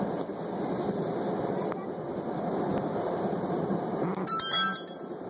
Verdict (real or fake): fake